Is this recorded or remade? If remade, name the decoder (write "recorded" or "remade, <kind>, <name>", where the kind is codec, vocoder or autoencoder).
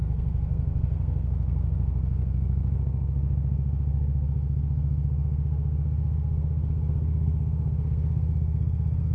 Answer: remade, codec, SNAC